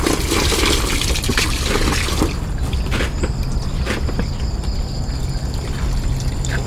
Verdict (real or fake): real